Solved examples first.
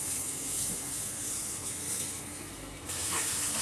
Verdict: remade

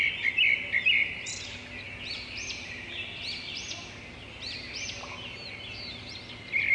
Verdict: recorded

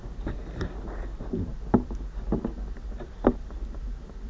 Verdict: recorded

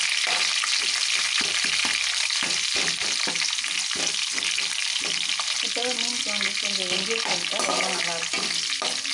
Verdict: recorded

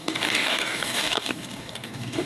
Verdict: remade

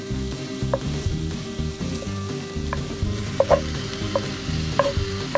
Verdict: remade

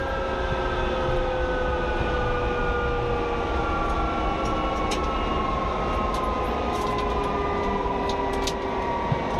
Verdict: recorded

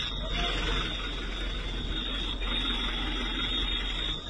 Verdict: recorded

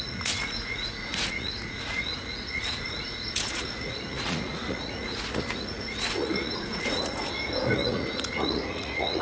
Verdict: remade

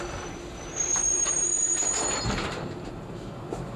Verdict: remade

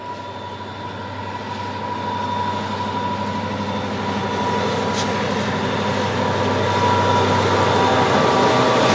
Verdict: recorded